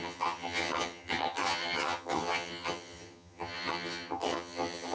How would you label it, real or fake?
fake